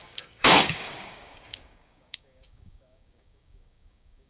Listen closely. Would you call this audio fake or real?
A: fake